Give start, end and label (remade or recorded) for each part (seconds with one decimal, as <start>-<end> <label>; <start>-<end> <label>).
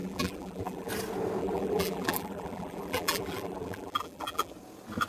0.0-0.9 remade; 0.9-1.4 recorded; 1.4-4.5 remade; 4.5-5.1 recorded